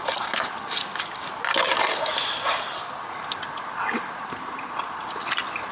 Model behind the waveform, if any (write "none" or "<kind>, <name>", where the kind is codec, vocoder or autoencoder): none